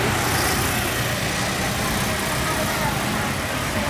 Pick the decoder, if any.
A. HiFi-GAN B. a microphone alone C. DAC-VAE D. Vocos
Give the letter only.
B